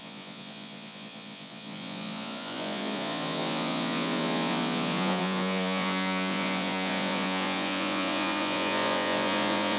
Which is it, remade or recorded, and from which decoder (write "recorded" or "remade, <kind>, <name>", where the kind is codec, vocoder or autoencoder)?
remade, vocoder, Vocos